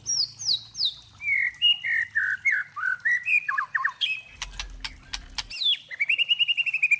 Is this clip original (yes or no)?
yes